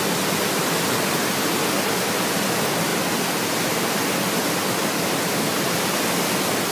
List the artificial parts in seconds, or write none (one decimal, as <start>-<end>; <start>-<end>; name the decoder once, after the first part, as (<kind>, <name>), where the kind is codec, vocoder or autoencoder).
none